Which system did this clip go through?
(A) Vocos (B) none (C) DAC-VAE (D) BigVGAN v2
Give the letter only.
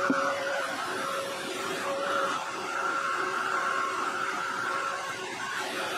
D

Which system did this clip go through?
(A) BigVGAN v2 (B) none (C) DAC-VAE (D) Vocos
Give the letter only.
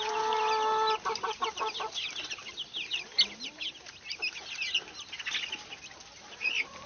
B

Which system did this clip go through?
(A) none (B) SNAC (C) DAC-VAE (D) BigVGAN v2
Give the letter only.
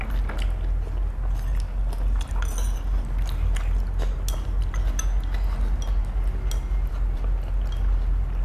A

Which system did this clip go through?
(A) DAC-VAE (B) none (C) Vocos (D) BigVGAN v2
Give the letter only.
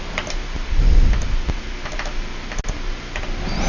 B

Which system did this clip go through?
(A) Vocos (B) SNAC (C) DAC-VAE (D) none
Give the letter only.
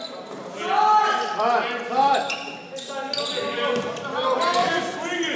D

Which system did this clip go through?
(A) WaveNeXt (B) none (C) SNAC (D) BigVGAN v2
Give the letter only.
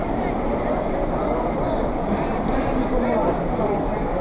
B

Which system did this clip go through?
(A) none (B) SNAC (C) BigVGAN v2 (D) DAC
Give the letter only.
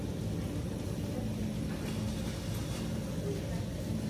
A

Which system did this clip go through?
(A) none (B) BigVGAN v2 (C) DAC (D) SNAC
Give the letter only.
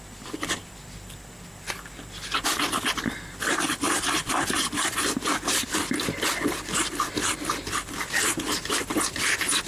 A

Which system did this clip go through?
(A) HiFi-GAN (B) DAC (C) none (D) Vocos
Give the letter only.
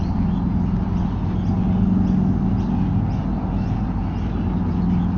C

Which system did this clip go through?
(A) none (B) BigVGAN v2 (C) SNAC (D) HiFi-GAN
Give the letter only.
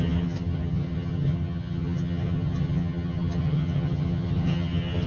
D